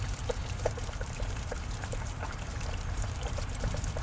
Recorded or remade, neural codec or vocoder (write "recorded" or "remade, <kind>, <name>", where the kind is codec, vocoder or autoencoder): remade, vocoder, BigVGAN v2